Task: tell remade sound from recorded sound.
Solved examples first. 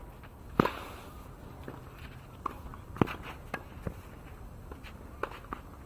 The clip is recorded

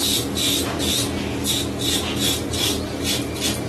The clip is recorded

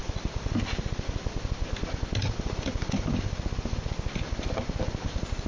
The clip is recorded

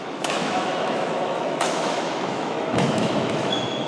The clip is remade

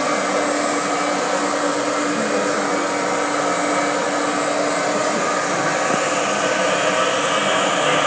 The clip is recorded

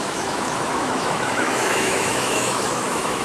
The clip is remade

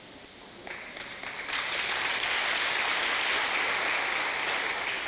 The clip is recorded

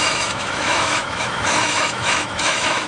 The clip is remade